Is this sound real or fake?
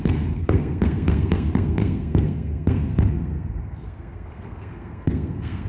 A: fake